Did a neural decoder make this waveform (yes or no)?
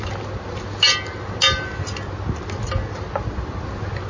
no